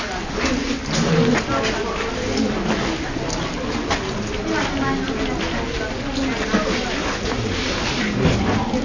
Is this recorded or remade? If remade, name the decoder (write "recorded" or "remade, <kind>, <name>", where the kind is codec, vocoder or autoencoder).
recorded